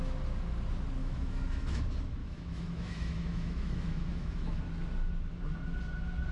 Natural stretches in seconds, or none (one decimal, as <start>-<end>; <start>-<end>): 0.0-1.0; 1.8-2.2; 4.6-6.3